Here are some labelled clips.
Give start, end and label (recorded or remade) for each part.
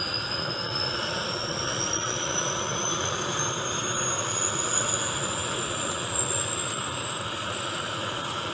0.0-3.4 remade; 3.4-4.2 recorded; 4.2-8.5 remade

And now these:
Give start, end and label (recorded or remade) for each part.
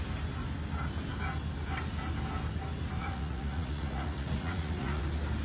0.0-3.0 recorded; 3.0-5.0 remade; 5.0-5.4 recorded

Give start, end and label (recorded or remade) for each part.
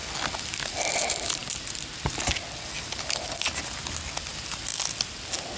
0.0-0.9 recorded; 0.9-1.4 remade; 1.4-4.3 recorded; 4.3-4.7 remade; 4.7-5.6 recorded